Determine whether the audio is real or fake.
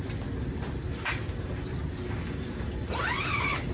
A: real